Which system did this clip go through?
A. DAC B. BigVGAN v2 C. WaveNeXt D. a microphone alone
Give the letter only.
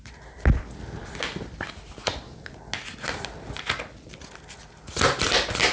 D